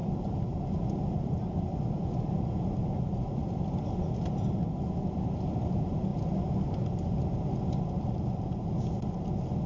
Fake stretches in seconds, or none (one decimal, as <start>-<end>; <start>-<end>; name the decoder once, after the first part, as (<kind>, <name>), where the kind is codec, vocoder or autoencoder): 0.0-4.0 (vocoder, BigVGAN v2); 6.1-7.7